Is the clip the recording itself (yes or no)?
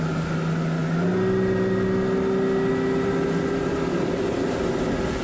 yes